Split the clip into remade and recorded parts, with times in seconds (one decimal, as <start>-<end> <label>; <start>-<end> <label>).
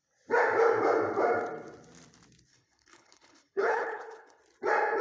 0.0-2.5 recorded; 2.5-4.4 remade; 4.4-5.0 recorded